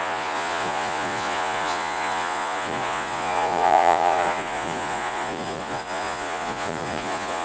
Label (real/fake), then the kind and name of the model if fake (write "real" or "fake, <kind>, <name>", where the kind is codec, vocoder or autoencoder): fake, vocoder, Vocos